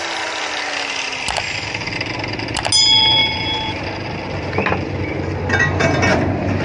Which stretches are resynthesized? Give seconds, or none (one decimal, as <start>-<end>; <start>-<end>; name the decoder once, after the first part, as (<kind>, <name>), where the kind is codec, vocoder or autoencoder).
3.2-3.8 (vocoder, BigVGAN v2)